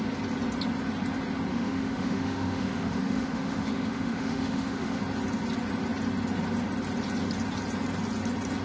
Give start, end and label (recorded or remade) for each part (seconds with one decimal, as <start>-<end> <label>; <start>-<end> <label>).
0.0-1.5 recorded; 1.5-5.0 remade; 5.0-8.6 recorded